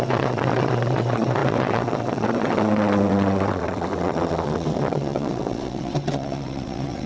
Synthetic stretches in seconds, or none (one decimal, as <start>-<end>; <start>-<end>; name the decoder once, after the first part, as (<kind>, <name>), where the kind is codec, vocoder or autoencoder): 0.0-7.1 (vocoder, WaveNeXt)